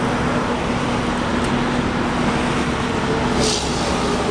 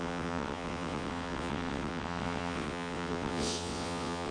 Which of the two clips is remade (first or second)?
second